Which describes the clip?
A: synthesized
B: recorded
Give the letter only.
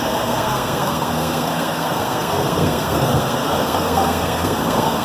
A